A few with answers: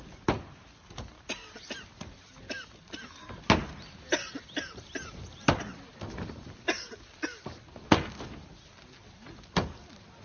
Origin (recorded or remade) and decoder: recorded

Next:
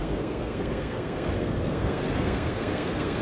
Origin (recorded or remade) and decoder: remade, codec, SNAC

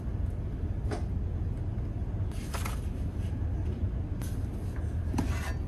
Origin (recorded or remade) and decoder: recorded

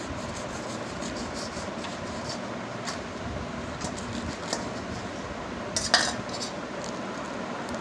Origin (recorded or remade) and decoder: recorded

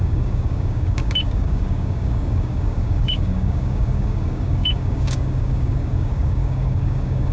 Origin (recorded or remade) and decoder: remade, codec, DAC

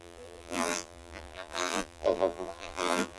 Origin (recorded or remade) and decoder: remade, vocoder, BigVGAN v2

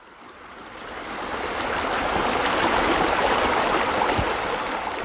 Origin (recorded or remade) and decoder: recorded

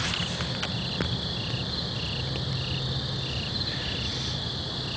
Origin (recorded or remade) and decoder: recorded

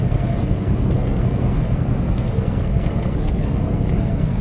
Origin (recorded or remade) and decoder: remade, codec, SNAC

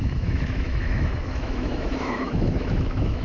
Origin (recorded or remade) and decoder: remade, autoencoder, DAC-VAE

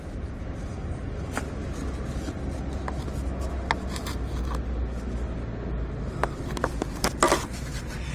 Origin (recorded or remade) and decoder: recorded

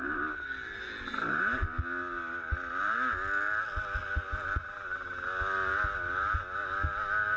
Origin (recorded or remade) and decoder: recorded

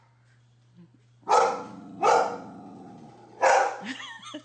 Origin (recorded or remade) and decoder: recorded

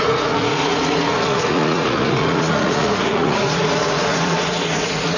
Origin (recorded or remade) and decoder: remade, vocoder, Vocos